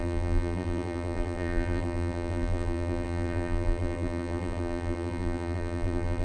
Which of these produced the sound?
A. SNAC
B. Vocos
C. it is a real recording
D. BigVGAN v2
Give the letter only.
D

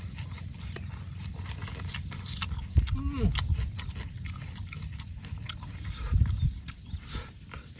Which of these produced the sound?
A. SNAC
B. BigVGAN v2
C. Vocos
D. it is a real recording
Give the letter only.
D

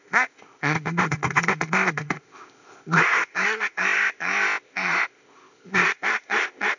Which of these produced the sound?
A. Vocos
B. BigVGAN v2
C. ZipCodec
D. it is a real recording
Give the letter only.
C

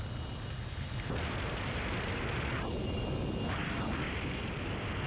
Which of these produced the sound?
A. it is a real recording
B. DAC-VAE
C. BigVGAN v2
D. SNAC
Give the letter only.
A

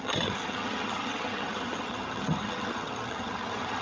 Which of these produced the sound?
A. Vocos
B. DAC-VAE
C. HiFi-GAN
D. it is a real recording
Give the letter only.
C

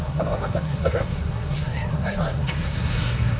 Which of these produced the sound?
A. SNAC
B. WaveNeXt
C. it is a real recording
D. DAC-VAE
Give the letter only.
A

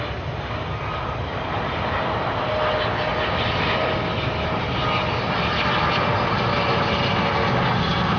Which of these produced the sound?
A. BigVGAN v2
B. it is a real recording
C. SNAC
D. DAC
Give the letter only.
B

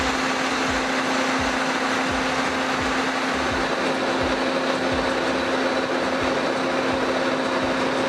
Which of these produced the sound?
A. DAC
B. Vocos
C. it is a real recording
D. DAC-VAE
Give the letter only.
C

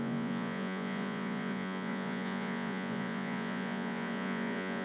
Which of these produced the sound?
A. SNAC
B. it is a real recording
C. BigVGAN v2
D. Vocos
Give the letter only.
D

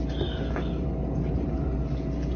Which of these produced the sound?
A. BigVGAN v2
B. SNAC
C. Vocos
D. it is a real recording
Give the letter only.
D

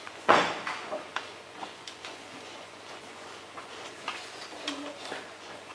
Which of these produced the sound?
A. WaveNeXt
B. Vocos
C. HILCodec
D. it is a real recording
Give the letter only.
B